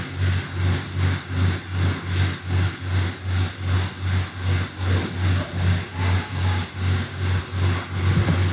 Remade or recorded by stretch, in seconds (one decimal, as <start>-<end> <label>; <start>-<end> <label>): 0.0-5.9 recorded; 5.9-7.4 remade; 7.4-8.5 recorded